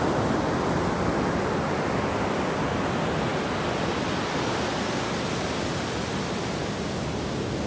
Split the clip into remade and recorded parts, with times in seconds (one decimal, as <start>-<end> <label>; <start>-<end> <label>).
0.0-7.7 recorded